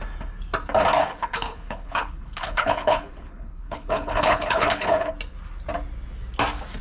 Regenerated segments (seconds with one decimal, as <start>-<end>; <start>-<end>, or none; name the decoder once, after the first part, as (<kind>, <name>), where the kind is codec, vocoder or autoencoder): 1.0-5.1 (codec, HILCodec)